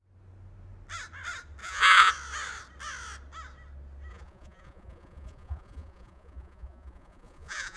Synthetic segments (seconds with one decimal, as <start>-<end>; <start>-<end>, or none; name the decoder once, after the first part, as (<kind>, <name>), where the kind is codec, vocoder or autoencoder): 1.6-2.1 (vocoder, Vocos); 4.1-7.8